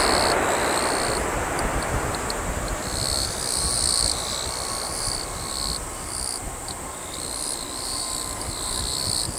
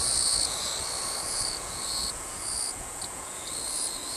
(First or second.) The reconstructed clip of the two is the second